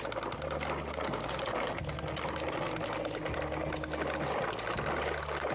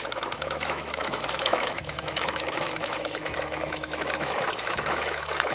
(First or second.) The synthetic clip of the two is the second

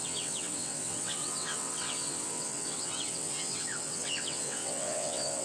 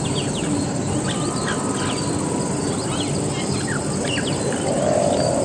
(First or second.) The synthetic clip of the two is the first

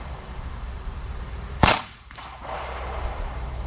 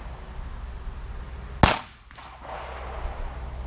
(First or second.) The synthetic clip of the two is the first